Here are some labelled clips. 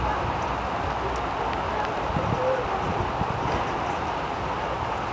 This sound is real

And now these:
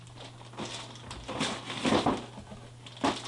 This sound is real